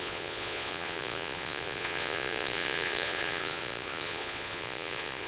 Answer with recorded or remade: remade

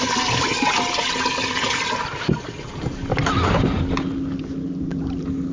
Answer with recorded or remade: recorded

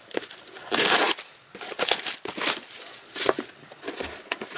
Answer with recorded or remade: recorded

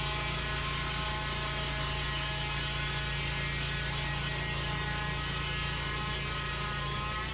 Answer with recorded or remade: recorded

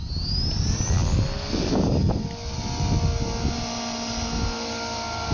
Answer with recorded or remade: recorded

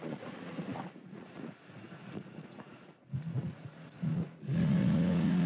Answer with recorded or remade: remade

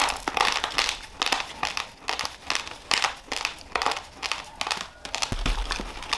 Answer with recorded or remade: recorded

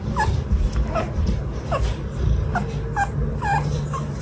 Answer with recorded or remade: recorded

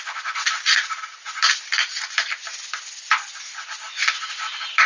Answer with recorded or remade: recorded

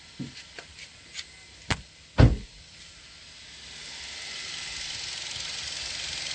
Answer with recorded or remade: recorded